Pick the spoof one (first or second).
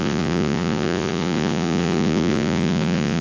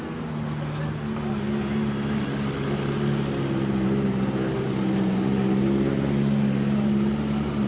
first